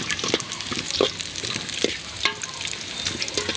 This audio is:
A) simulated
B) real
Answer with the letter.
B